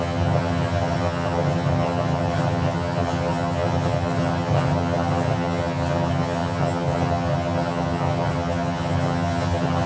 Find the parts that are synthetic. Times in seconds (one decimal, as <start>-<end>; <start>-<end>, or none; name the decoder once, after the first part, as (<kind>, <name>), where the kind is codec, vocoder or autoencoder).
0.0-9.9 (vocoder, HiFi-GAN)